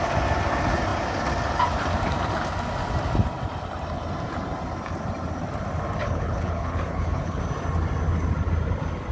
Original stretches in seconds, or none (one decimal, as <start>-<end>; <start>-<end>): 0.0-6.0; 7.4-9.1